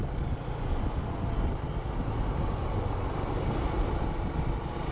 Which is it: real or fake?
real